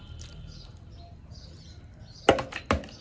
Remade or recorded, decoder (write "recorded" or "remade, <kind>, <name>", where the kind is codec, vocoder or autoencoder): recorded